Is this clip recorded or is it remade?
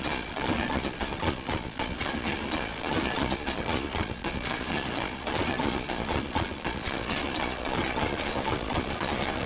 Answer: remade